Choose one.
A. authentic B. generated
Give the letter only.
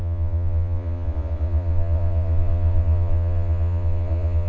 B